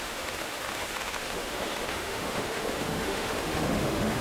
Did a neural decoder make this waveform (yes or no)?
yes